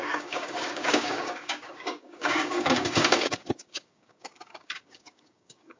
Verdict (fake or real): fake